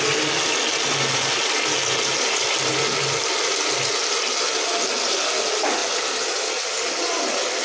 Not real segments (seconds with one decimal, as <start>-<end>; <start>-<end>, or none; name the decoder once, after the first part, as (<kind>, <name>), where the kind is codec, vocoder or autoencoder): none